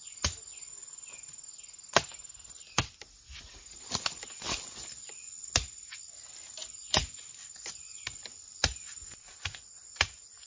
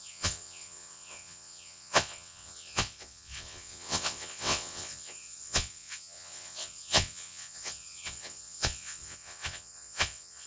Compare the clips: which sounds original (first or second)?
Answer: first